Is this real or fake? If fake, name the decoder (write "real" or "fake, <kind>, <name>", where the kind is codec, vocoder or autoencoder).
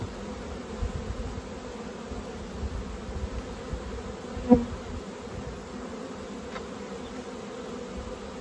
real